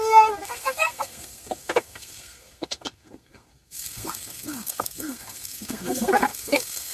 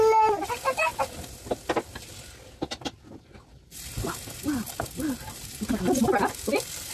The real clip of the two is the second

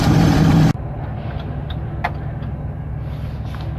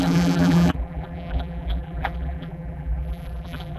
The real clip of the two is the first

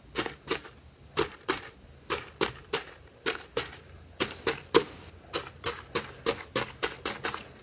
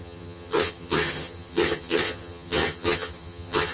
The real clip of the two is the first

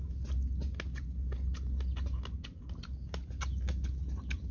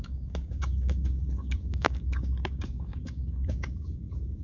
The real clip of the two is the first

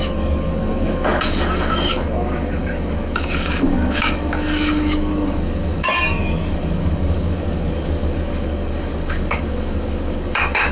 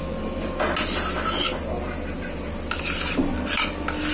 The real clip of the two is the second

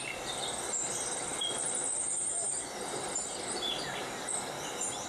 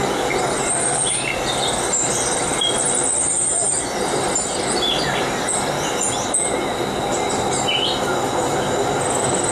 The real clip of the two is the second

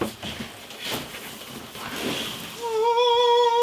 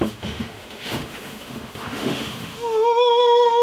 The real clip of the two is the first